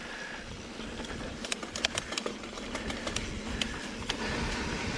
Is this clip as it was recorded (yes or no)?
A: yes